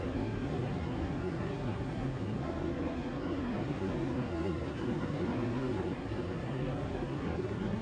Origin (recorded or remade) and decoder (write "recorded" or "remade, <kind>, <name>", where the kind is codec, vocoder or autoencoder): remade, codec, SNAC